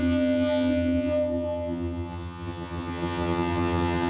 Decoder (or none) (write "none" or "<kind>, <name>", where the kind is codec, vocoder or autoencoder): vocoder, HiFi-GAN